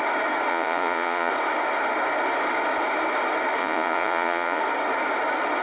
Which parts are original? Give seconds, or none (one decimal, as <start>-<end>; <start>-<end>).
0.0-0.5; 1.3-3.6; 4.6-5.6